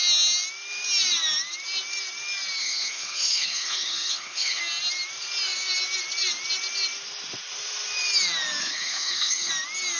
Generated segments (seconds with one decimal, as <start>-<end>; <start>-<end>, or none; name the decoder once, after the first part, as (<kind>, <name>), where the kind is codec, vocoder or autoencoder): 2.6-4.6 (codec, HILCodec); 8.6-9.5